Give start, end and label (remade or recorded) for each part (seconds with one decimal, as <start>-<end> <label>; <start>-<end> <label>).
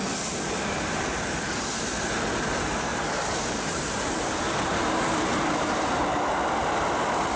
0.0-2.9 recorded; 2.9-5.7 remade; 5.7-7.4 recorded